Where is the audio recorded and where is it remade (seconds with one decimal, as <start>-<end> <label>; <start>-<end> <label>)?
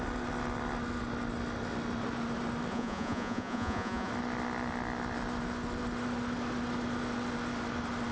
0.0-2.7 recorded; 2.7-4.1 remade; 4.1-8.1 recorded